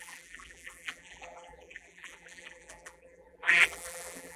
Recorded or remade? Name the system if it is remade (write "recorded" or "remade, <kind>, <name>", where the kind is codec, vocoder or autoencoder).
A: remade, vocoder, BigVGAN v2